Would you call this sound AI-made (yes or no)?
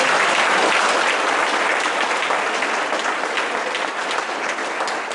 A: no